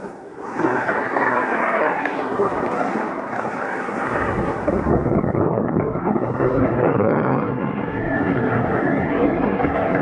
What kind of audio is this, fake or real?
fake